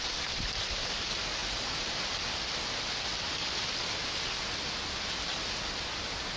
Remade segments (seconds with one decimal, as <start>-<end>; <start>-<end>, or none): none